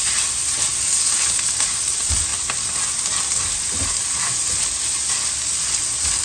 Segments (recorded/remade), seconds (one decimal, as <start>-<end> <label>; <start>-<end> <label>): 0.0-6.2 recorded